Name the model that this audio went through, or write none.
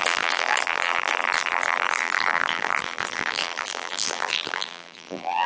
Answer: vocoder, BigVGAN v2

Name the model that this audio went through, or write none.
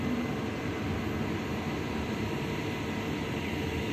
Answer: none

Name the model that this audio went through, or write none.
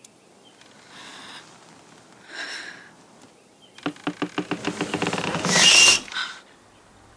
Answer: none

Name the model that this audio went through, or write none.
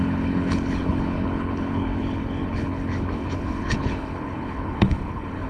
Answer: codec, HILCodec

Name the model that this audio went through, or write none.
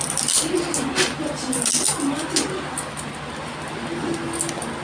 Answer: none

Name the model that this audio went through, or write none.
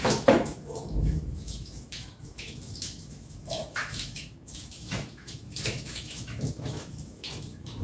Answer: autoencoder, DAC-VAE